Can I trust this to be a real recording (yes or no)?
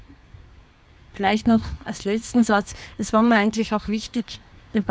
no